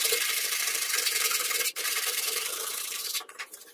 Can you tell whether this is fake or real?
fake